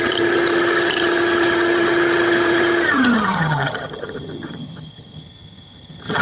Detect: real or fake fake